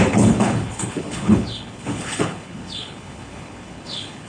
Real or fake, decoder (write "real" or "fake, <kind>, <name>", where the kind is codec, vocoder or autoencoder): fake, codec, HILCodec